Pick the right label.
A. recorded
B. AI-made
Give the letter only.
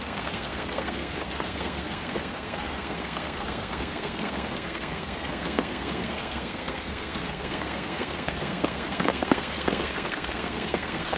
B